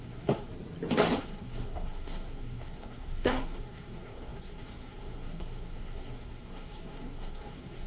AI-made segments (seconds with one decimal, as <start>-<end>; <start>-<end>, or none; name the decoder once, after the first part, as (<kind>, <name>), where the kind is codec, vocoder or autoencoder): 0.0-0.5 (codec, SNAC); 1.2-7.9